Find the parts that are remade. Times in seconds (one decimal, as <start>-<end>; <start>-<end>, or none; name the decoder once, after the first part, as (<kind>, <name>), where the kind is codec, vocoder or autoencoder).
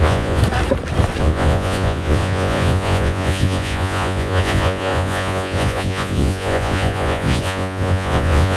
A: 0.0-0.4 (vocoder, Vocos); 1.2-8.6